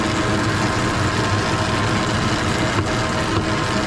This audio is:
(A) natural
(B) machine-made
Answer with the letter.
A